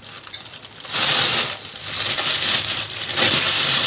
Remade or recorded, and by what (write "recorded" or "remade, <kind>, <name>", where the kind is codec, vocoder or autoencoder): recorded